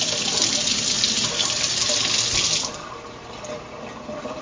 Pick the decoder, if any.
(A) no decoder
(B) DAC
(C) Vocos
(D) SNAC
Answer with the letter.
A